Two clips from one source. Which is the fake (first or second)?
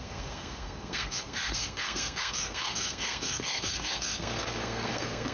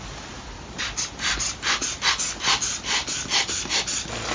first